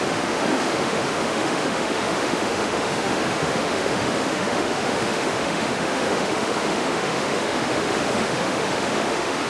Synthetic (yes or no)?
yes